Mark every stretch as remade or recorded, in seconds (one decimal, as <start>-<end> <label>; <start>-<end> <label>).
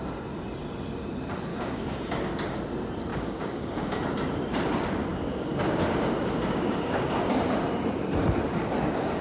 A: 0.0-1.5 recorded; 1.5-2.6 remade; 2.6-3.1 recorded; 3.1-4.0 remade; 4.0-5.1 recorded; 5.1-7.3 remade; 7.3-9.2 recorded